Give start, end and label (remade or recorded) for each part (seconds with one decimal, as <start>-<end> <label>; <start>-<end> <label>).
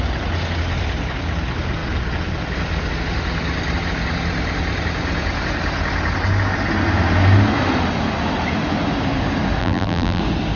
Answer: 0.0-9.6 recorded; 9.6-10.2 remade; 10.2-10.6 recorded